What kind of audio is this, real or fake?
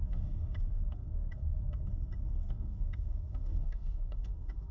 fake